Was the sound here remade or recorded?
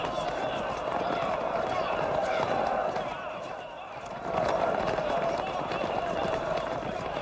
recorded